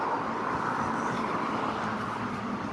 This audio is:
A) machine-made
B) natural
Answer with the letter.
B